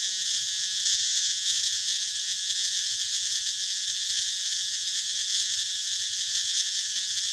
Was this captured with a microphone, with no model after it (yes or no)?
no